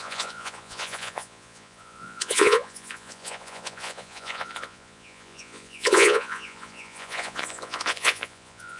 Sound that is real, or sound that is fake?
fake